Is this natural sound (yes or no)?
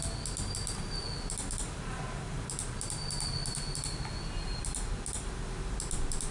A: yes